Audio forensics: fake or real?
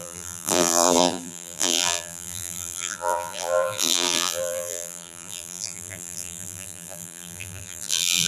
fake